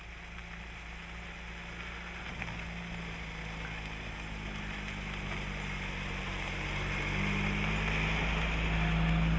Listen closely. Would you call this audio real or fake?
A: real